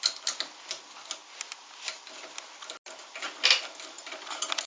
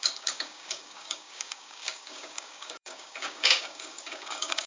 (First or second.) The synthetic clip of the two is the second